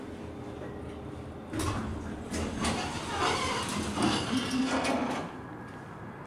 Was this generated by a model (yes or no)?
no